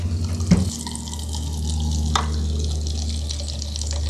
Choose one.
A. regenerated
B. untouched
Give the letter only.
B